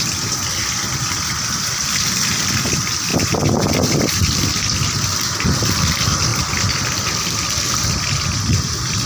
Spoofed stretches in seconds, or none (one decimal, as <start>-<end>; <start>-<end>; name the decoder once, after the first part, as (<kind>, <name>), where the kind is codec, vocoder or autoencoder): 3.1-5.8 (vocoder, BigVGAN v2); 6.3-7.5

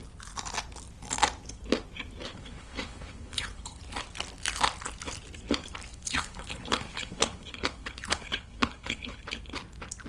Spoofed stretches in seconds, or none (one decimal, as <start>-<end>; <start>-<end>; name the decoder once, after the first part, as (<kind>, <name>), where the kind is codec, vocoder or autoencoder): 2.3-3.8 (codec, HILCodec); 5.9-9.2

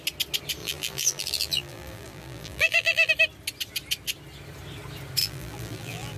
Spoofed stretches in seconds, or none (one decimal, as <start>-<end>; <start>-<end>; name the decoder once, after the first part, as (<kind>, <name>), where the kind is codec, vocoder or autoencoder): 0.6-3.1 (vocoder, BigVGAN v2); 5.2-6.2

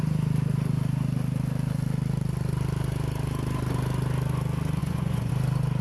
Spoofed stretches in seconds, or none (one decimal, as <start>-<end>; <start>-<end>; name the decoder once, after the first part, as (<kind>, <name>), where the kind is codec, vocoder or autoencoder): 4.8-5.3 (vocoder, Vocos)

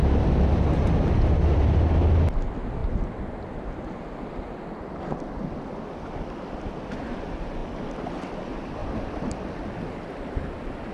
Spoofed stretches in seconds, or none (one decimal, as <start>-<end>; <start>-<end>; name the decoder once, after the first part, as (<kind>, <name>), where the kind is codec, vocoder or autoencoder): 0.0-1.1 (vocoder, BigVGAN v2); 2.8-3.9; 8.8-9.3

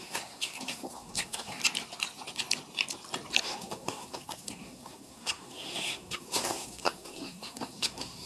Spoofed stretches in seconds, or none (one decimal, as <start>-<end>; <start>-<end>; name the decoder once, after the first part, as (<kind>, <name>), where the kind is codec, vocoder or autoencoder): 0.0-1.6 (codec, SNAC); 3.4-8.3

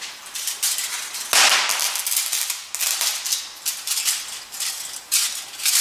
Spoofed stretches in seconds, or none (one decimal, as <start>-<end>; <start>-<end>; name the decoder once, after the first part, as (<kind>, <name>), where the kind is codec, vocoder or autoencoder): none